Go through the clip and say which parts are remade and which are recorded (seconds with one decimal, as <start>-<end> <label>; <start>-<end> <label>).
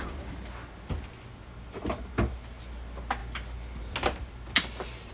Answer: 0.0-5.1 recorded